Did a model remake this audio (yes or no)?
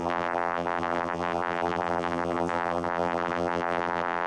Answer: yes